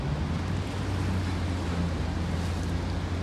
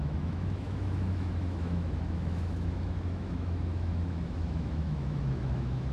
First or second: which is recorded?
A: first